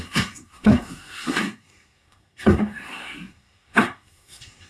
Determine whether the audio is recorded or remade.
remade